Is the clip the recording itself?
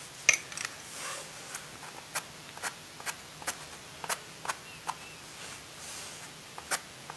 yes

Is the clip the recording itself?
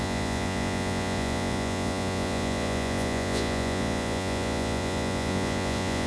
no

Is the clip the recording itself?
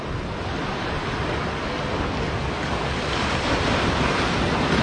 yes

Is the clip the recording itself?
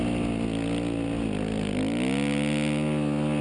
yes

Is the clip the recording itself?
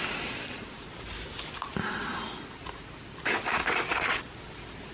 yes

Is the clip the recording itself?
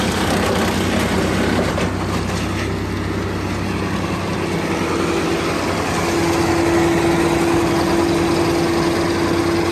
yes